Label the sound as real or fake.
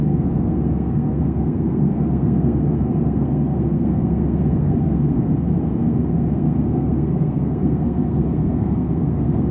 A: fake